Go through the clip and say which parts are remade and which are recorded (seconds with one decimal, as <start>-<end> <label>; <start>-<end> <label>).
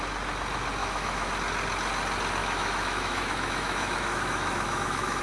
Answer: 0.0-0.8 recorded; 0.8-1.3 remade; 1.3-2.4 recorded; 2.4-5.2 remade